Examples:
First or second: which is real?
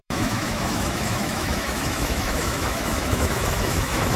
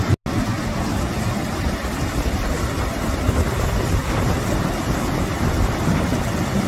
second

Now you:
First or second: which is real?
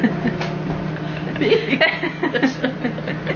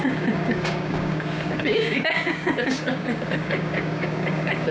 first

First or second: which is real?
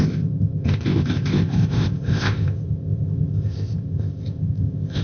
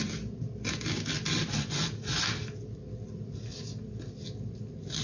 second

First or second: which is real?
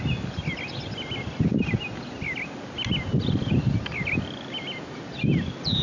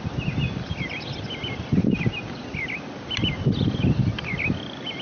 first